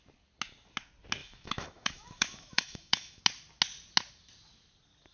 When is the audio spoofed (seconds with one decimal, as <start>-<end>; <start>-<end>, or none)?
1.2-3.2